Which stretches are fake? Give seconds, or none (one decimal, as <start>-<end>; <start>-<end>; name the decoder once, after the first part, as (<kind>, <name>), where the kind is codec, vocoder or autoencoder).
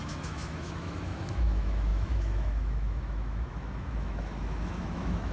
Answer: 0.0-5.3 (autoencoder, DAC-VAE)